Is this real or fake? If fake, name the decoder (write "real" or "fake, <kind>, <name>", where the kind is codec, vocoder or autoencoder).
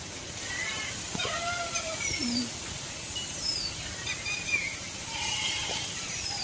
real